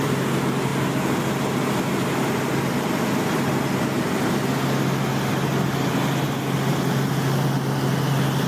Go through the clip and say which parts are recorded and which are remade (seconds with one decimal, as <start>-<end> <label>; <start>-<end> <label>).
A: 0.0-8.5 recorded